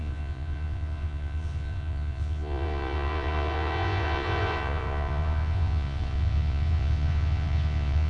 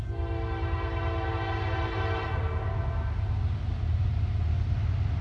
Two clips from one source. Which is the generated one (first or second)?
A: first